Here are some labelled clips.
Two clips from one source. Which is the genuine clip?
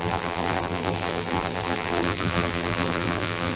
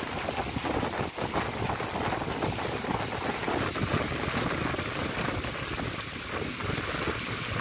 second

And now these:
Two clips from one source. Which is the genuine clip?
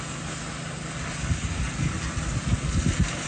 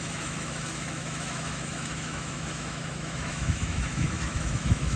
first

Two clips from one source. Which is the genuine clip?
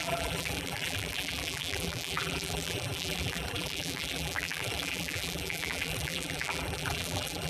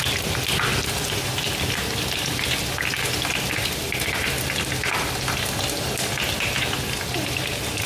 second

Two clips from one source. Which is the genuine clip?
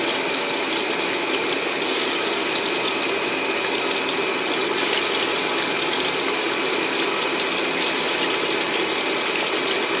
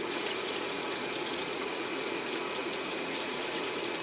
first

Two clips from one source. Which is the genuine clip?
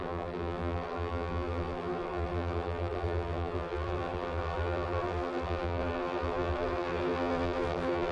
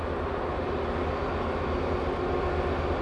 second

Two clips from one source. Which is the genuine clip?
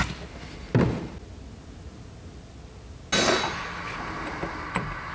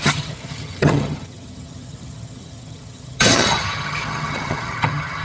first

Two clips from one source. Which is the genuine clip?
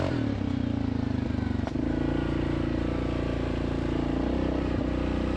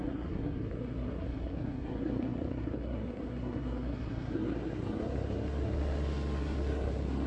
first